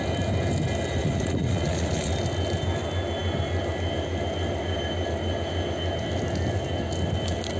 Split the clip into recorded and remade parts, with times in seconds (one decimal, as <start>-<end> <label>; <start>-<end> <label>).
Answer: 0.0-1.0 recorded; 1.0-2.1 remade; 2.1-7.6 recorded